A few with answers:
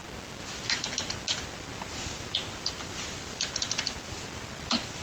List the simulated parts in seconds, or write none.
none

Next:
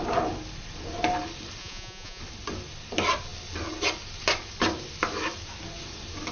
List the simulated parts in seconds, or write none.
1.6-2.2 (vocoder, Vocos)

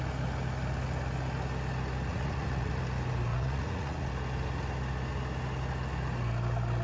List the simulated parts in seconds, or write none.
2.1-2.7 (vocoder, Vocos); 3.3-4.1

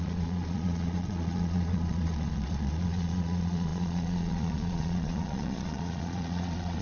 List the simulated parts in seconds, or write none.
0.0-6.8 (vocoder, Vocos)

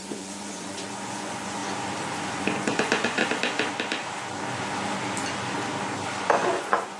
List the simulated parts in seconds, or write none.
0.0-1.6 (vocoder, Vocos); 2.3-3.2; 6.2-7.0